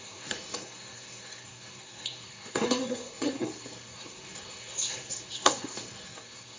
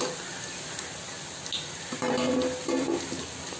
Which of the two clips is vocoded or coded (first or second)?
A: first